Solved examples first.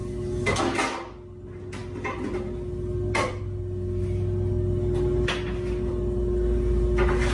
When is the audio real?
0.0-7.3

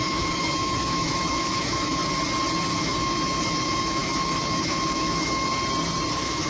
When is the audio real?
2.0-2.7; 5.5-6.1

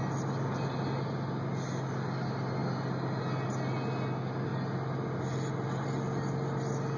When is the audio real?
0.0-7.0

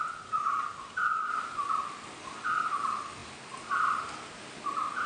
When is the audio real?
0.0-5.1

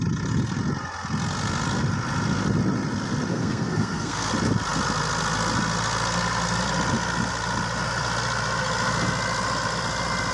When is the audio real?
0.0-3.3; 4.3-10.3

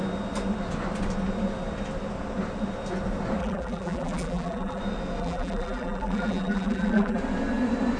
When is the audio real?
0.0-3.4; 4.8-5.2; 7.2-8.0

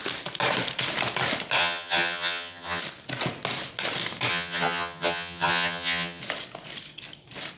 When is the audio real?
0.0-1.6; 2.8-4.3; 6.2-7.6

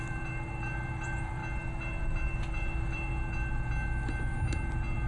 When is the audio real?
1.4-1.9; 3.1-5.1